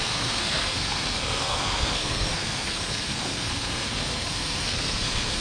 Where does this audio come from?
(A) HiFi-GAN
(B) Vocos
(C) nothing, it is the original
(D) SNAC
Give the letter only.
D